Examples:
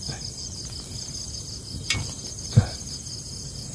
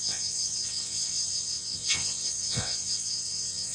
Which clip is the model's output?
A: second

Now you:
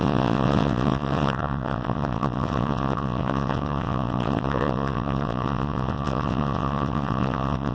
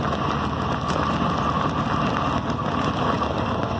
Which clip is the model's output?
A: first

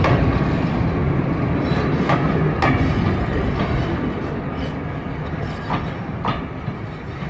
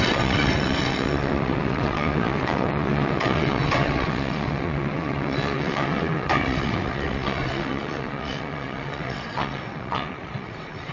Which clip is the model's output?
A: second